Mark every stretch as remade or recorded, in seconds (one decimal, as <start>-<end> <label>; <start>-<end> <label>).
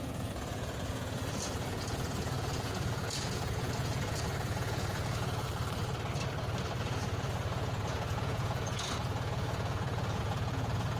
0.0-5.5 remade; 5.5-6.8 recorded; 6.8-11.0 remade